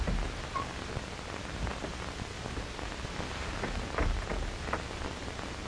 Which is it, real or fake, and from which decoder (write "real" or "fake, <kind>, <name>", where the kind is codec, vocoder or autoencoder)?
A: real